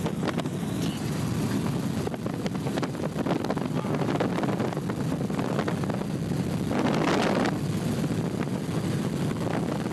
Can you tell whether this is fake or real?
real